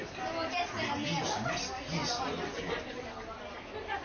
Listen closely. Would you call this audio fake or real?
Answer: real